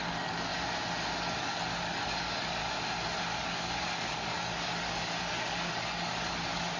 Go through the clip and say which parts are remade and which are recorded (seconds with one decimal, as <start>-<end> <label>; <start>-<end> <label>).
0.0-0.5 remade; 0.5-1.4 recorded; 1.4-2.6 remade; 2.6-3.2 recorded; 3.2-6.8 remade